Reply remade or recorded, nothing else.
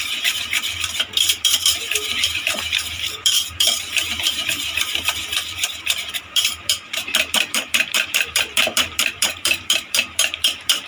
remade